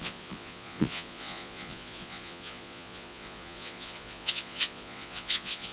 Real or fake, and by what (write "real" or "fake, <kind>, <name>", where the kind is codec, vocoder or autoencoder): fake, vocoder, Vocos